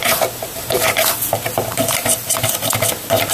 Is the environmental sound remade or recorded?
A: remade